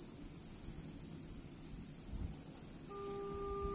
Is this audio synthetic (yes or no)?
no